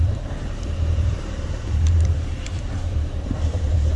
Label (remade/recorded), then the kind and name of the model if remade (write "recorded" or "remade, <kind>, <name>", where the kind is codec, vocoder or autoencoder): remade, vocoder, BigVGAN v2